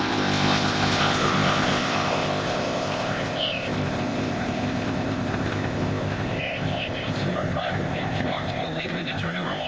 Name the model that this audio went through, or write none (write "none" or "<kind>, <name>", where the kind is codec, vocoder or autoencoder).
codec, ZipCodec